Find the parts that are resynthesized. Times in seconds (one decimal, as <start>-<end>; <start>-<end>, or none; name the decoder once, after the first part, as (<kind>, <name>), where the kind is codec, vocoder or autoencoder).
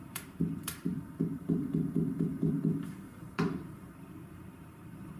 0.0-5.2 (vocoder, BigVGAN v2)